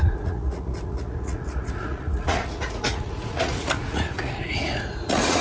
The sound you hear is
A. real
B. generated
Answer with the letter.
B